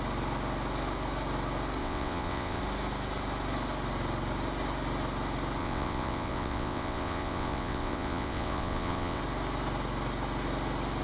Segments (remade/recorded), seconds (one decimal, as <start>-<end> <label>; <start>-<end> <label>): 0.0-1.8 recorded; 1.8-2.6 remade; 2.6-5.6 recorded; 5.6-9.2 remade; 9.2-11.0 recorded